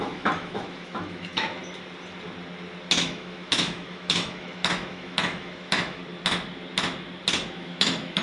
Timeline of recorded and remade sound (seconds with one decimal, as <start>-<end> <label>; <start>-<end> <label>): 0.0-1.6 remade; 1.6-3.0 recorded; 3.0-6.0 remade; 6.0-7.5 recorded; 7.5-8.2 remade